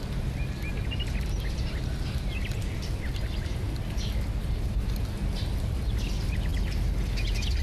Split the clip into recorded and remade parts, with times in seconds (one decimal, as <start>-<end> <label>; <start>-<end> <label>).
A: 0.0-7.6 recorded